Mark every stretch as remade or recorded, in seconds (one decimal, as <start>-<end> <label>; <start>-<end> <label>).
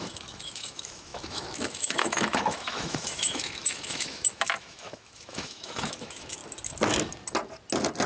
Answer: 0.0-6.4 remade; 6.4-8.1 recorded